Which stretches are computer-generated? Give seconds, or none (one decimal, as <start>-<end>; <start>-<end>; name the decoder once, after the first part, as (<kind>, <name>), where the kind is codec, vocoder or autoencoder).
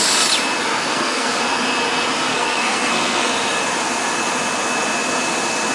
0.7-1.4 (codec, SNAC); 2.3-3.3